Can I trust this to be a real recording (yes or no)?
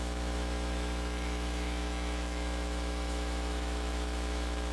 no